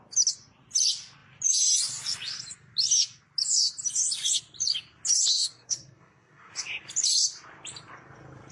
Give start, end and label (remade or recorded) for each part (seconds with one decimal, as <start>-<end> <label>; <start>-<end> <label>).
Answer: 0.0-5.3 recorded; 5.3-6.5 remade; 6.5-8.5 recorded